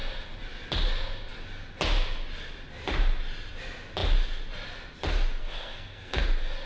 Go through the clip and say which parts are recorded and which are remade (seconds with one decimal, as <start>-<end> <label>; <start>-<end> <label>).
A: 0.0-5.4 recorded; 5.4-6.2 remade; 6.2-6.7 recorded